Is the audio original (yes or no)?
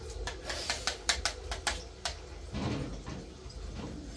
yes